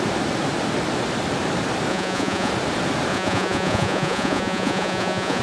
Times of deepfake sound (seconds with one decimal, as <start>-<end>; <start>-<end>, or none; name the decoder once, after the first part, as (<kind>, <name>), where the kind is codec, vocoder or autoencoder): 1.9-2.5 (vocoder, Vocos); 3.1-5.4